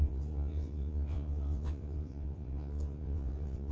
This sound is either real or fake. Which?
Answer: fake